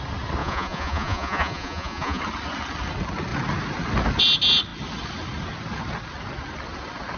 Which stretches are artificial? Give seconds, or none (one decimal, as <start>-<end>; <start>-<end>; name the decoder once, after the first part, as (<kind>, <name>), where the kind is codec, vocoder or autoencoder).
0.4-2.2 (vocoder, Vocos)